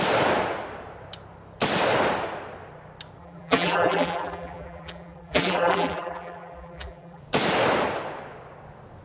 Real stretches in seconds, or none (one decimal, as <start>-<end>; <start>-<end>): 0.0-3.2; 7.2-9.0